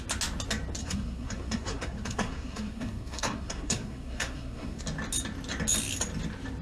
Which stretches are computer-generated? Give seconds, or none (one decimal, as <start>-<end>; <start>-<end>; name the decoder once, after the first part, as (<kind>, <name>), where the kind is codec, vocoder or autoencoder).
0.8-4.8 (codec, SNAC)